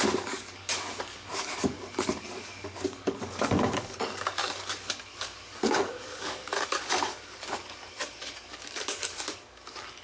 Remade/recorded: remade